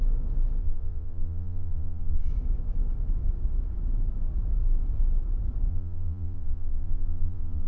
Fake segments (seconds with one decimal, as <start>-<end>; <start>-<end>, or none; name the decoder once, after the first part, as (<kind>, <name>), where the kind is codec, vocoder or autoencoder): 0.6-2.3 (vocoder, Vocos); 5.7-7.7

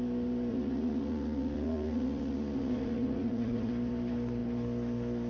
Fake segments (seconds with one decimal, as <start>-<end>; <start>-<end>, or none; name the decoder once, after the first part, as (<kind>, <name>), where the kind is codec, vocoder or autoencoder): 0.5-3.7 (vocoder, Vocos)